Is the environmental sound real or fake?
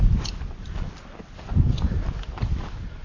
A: real